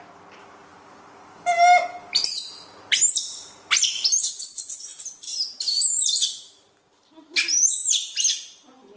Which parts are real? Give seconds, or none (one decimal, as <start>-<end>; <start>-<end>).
0.0-9.0